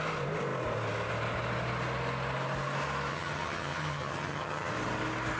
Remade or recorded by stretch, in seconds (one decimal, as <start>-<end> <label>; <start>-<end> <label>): 0.0-3.1 recorded; 3.1-4.7 remade; 4.7-5.4 recorded